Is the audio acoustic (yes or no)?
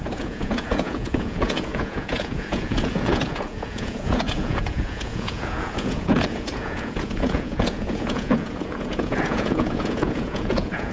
no